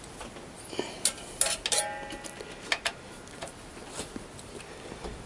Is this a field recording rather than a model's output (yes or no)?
yes